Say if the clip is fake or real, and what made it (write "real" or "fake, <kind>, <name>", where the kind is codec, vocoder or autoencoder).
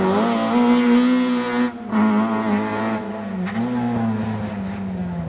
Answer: real